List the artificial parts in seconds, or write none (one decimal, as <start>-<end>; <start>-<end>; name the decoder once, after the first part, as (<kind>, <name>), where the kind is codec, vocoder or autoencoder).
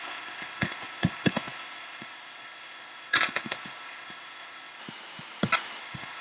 0.0-4.8 (codec, ZipCodec); 5.8-6.2